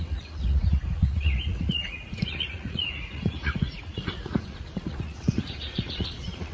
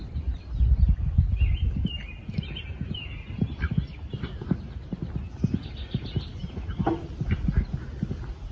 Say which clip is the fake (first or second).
first